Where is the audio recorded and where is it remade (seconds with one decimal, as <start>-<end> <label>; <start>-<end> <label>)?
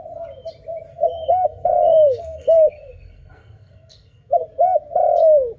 0.0-0.9 recorded; 0.9-4.3 remade; 4.3-5.6 recorded